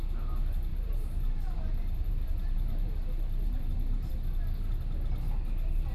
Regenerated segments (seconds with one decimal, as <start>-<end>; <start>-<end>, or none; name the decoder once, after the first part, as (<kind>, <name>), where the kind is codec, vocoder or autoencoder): 0.7-4.1 (vocoder, BigVGAN v2)